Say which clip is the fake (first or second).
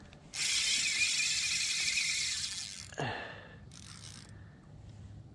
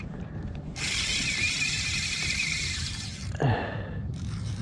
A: second